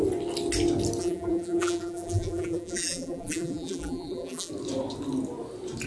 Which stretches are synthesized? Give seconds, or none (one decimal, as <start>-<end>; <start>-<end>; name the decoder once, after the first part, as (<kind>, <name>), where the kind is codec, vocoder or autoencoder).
1.0-4.5 (vocoder, BigVGAN v2)